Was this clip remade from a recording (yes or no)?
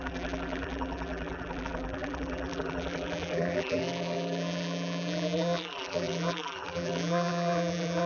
yes